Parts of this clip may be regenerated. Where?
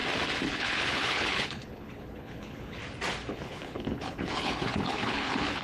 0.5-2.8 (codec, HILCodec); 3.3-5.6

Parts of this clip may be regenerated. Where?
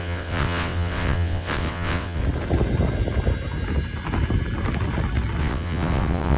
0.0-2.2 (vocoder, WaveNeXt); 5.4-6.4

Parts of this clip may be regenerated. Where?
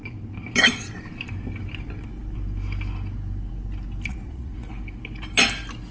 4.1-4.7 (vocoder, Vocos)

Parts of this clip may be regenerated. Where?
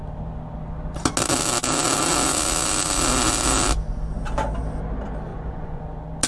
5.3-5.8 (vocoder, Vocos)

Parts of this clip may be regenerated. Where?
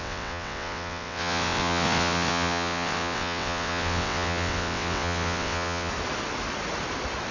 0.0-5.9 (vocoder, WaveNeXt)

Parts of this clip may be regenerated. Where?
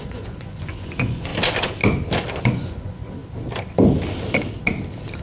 0.0-1.3 (vocoder, Vocos); 2.4-3.2